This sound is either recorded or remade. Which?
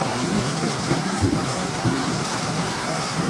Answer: remade